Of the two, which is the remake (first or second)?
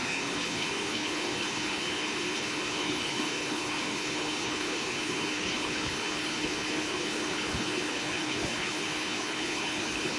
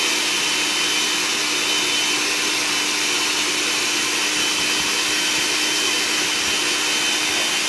first